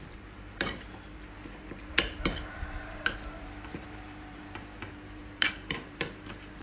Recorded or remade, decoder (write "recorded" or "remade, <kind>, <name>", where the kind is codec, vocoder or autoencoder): remade, vocoder, BigVGAN v2